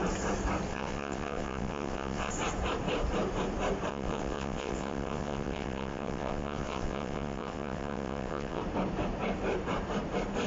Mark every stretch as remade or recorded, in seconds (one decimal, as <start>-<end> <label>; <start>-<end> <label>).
0.0-0.7 recorded; 0.7-2.3 remade; 2.3-3.9 recorded; 3.9-8.6 remade; 8.6-10.5 recorded